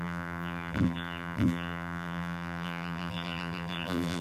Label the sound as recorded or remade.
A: remade